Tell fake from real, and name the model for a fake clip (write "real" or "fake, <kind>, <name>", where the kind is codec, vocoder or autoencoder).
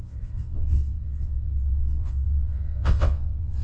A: fake, vocoder, WaveNeXt